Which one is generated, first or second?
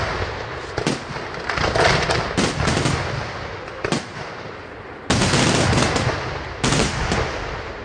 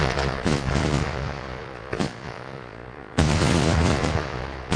second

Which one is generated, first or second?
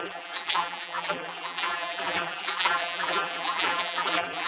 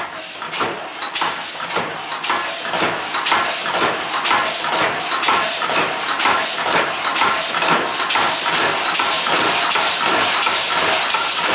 first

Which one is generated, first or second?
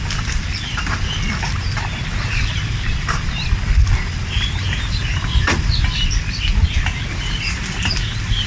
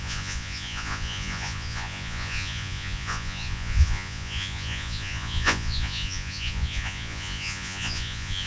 second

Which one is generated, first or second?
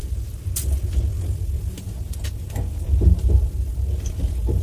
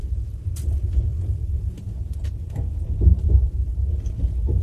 second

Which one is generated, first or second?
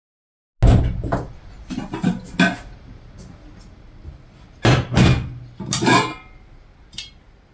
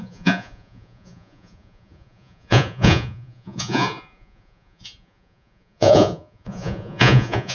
second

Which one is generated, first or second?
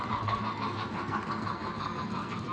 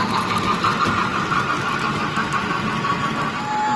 first